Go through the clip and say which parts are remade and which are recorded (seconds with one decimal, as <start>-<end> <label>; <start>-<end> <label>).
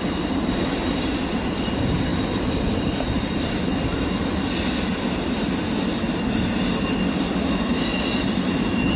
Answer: 0.0-3.7 remade; 3.7-9.0 recorded